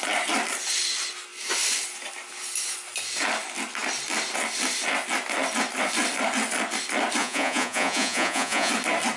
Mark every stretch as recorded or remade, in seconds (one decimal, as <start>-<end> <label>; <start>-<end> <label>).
0.0-7.2 recorded; 7.2-8.7 remade; 8.7-9.2 recorded